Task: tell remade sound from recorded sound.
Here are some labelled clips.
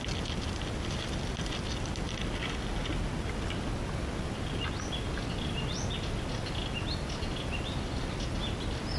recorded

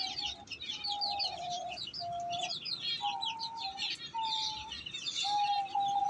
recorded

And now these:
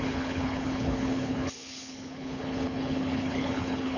remade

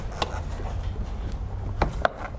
recorded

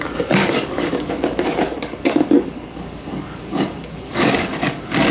remade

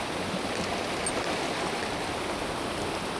recorded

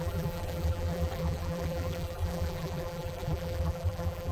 remade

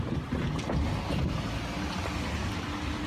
recorded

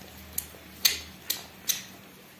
recorded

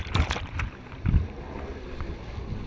recorded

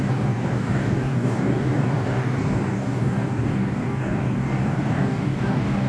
remade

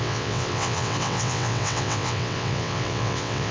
remade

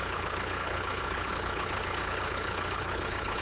remade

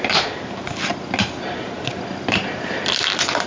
recorded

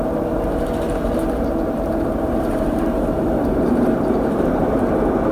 remade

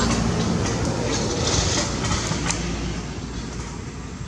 recorded